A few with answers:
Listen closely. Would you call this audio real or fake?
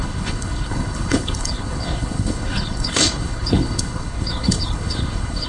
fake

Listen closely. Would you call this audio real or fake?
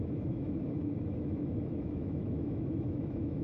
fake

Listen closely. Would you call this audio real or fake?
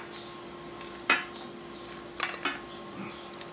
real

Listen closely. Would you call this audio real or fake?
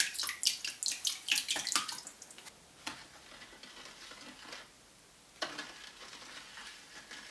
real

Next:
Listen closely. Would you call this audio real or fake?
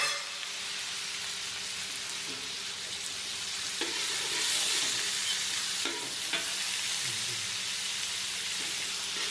real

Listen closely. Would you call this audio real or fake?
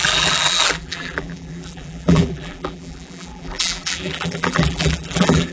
fake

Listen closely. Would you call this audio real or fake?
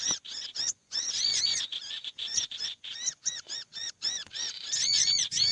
fake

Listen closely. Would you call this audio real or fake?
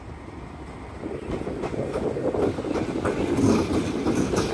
real